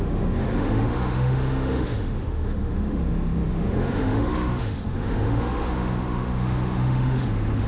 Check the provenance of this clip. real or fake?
fake